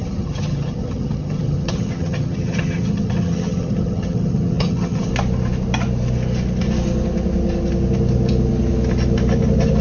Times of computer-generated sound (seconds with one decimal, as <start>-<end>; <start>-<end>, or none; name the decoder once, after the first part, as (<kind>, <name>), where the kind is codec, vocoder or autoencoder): 0.0-5.1 (vocoder, HiFi-GAN)